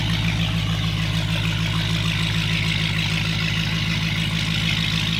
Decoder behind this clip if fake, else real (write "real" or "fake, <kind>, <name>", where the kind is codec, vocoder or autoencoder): real